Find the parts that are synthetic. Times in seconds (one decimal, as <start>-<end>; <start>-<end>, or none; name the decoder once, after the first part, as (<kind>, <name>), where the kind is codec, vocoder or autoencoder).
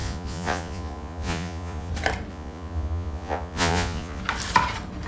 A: 0.0-1.9 (vocoder, Vocos); 2.3-4.2